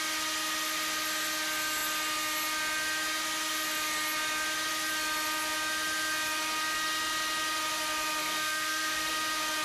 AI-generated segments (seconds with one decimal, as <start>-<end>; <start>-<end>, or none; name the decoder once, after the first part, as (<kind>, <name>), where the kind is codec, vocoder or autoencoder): 8.2-9.1 (codec, SNAC)